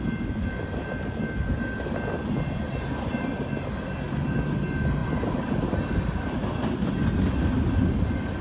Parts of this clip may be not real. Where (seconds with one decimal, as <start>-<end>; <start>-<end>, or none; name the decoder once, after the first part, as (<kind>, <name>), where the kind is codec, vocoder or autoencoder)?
none